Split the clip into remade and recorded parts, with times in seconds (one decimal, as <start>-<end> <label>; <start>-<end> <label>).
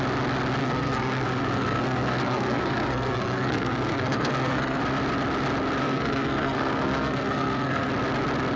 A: 0.0-0.6 recorded; 0.6-4.8 remade; 4.8-5.8 recorded; 5.8-7.9 remade; 7.9-8.6 recorded